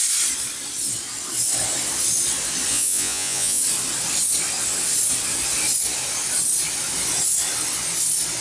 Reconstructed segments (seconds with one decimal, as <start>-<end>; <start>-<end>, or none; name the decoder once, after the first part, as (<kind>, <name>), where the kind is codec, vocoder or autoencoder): 2.7-3.6 (vocoder, Vocos)